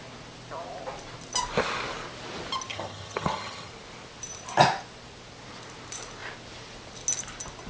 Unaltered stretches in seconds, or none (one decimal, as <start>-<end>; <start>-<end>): 0.0-2.7; 3.7-7.7